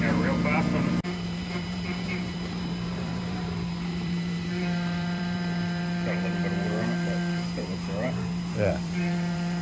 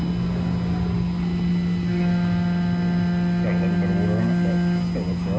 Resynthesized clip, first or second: first